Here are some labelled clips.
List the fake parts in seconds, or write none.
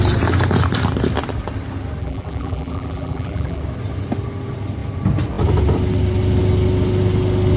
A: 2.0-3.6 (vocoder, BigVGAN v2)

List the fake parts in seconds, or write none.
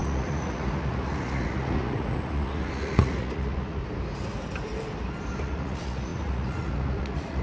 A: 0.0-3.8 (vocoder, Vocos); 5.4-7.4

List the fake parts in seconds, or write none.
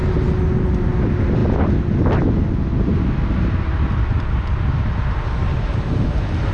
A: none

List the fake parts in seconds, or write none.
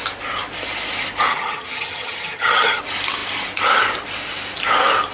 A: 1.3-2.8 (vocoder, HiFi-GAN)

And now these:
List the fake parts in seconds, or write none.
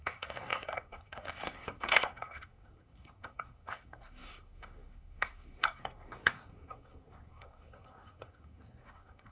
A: 0.0-9.3 (codec, SNAC)